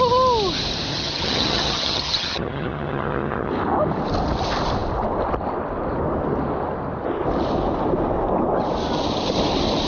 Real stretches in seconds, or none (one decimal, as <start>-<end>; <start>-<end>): 0.0-0.9; 3.5-9.9